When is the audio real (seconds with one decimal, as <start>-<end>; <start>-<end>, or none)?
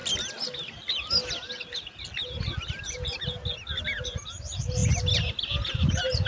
0.0-6.3